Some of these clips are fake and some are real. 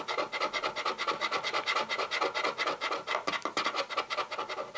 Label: real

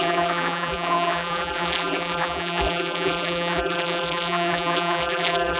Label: fake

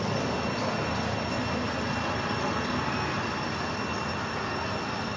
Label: real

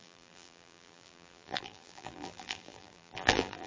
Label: fake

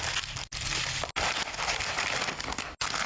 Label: real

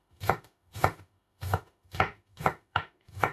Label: fake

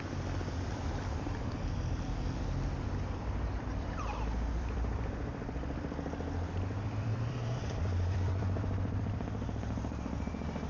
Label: fake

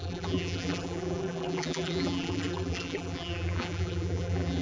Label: fake